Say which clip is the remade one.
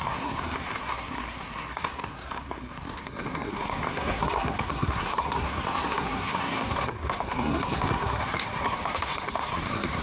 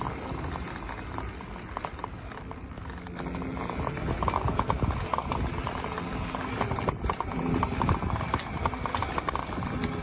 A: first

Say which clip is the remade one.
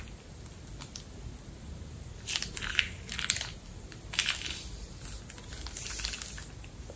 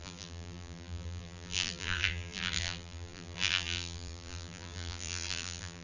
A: second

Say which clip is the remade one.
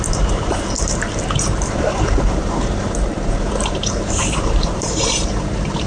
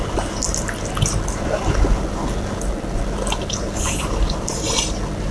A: first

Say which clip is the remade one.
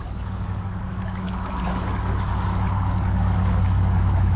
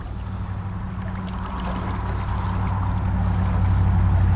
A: first